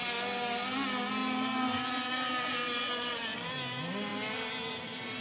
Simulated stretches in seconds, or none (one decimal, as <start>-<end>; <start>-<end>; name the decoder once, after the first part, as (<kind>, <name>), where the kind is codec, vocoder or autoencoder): none